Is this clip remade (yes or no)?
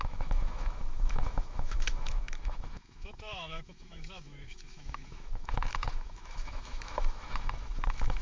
yes